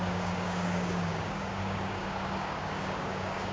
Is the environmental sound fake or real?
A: fake